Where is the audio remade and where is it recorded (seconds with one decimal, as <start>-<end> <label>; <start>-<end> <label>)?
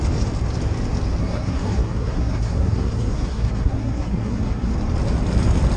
0.0-1.2 recorded; 1.2-4.7 remade; 4.7-5.8 recorded